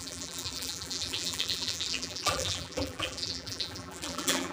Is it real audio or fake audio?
fake